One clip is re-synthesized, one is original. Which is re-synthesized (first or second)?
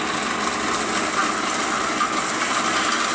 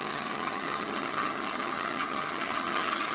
second